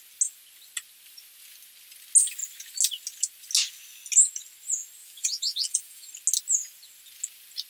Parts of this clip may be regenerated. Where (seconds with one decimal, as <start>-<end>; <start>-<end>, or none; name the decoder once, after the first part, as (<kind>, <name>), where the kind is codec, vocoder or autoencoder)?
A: 5.0-6.1 (vocoder, BigVGAN v2)